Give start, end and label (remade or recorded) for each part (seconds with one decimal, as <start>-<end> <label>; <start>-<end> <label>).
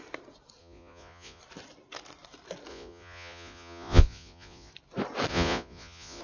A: 0.0-0.6 recorded; 0.6-1.4 remade; 1.4-2.7 recorded; 2.7-4.7 remade; 4.7-5.3 recorded; 5.3-6.2 remade